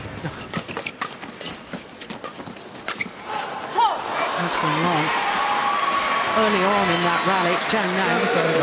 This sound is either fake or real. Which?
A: real